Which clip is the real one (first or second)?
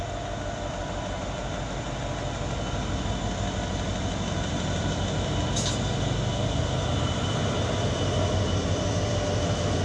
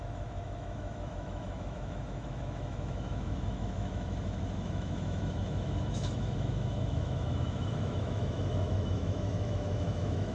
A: first